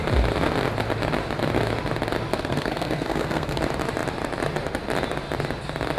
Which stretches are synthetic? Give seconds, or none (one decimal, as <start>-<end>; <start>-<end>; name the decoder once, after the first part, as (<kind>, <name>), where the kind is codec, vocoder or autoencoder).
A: 2.3-3.6 (codec, SNAC)